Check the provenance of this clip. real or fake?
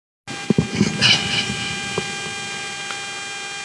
real